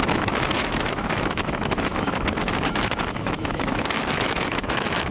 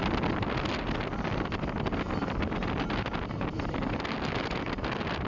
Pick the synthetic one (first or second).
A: first